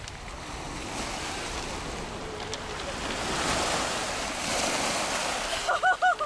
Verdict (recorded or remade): recorded